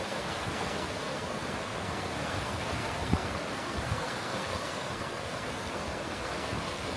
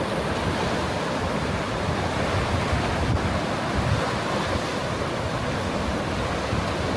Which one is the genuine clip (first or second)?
second